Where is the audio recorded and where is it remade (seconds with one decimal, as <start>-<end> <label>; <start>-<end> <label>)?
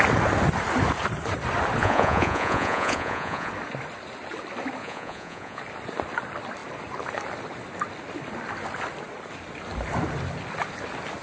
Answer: 0.0-1.8 recorded; 1.8-3.5 remade; 3.5-4.8 recorded; 4.8-5.6 remade; 5.6-11.2 recorded